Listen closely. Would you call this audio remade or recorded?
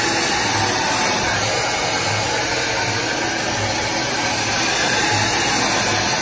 recorded